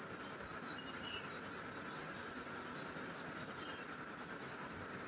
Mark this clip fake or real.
real